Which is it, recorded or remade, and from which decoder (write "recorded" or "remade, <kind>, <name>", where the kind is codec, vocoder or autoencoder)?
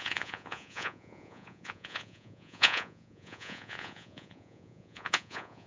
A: remade, vocoder, Vocos